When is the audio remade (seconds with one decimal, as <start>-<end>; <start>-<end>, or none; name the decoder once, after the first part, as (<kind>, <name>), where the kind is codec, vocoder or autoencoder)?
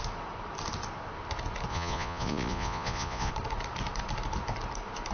1.7-3.3 (vocoder, Vocos)